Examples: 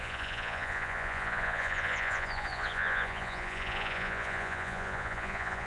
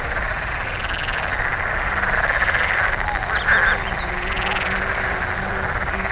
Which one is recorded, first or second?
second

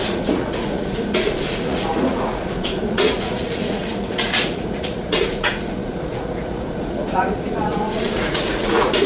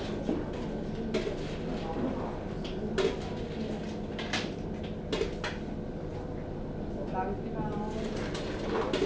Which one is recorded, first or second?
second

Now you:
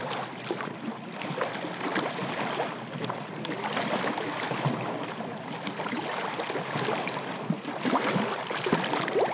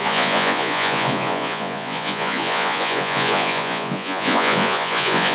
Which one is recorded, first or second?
first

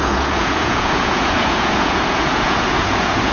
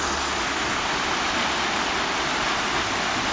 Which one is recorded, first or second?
second